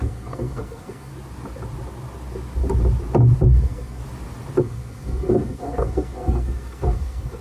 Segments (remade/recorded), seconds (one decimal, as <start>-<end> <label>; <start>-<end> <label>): 0.0-1.1 remade; 1.1-3.5 recorded; 3.5-4.0 remade; 4.0-4.6 recorded; 4.6-7.4 remade